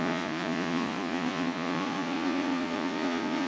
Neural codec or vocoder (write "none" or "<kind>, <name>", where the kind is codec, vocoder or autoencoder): vocoder, Vocos